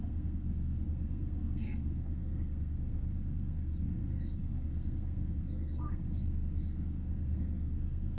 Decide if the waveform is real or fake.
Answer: fake